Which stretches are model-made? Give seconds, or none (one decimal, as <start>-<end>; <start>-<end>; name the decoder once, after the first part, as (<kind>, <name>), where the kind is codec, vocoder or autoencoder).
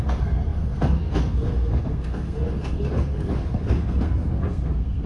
0.0-5.1 (codec, SNAC)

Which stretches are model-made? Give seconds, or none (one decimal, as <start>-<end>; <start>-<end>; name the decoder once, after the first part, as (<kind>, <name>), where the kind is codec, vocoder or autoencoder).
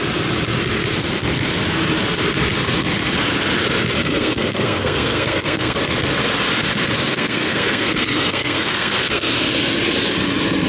4.0-5.8 (codec, SNAC); 7.1-9.3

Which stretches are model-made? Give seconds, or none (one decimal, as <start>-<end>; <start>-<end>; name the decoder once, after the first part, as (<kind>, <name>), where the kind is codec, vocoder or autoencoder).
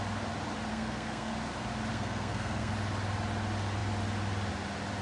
0.7-1.3 (codec, SNAC); 1.9-2.7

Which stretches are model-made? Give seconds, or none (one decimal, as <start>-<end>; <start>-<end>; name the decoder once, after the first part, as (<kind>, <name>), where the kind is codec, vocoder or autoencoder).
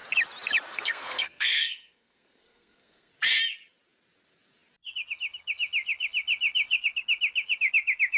0.7-3.1 (codec, SNAC)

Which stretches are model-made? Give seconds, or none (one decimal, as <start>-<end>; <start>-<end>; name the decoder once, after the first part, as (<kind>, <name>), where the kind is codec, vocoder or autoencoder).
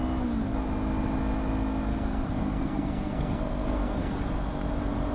1.9-4.1 (codec, SNAC)